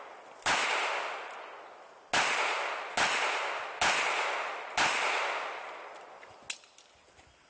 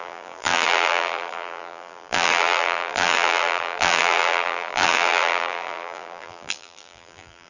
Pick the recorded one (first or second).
first